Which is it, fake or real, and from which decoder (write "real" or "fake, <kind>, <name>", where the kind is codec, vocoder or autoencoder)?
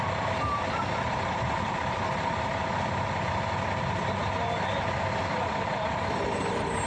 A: real